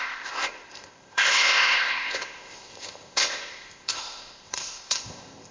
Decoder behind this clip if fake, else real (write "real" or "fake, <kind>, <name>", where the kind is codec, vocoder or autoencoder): fake, codec, ZipCodec